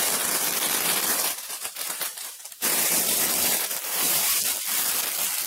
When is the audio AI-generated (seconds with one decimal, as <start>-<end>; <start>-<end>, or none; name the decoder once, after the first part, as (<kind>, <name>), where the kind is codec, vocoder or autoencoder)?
1.1-4.4 (vocoder, BigVGAN v2)